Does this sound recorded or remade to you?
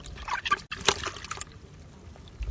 recorded